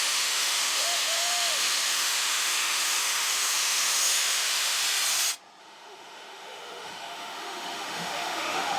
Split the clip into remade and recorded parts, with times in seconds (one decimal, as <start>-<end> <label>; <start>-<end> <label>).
0.0-4.8 remade; 4.8-5.6 recorded; 5.6-8.8 remade